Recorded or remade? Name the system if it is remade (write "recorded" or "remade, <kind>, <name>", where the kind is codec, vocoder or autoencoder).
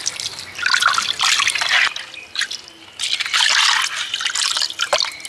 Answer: recorded